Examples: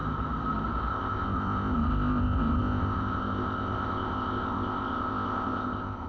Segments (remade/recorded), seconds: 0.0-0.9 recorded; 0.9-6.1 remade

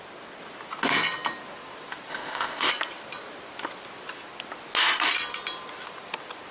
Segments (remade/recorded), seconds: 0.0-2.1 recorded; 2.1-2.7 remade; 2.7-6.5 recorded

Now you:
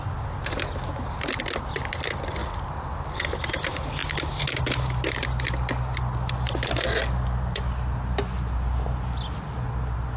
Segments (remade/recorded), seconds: 0.0-10.2 recorded

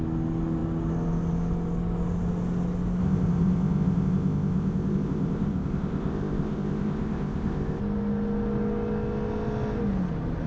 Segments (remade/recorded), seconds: 0.0-3.0 recorded; 3.0-7.8 remade; 7.8-10.5 recorded